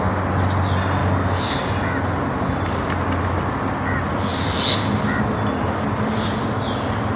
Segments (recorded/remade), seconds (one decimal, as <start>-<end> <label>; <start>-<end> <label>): 0.0-7.2 recorded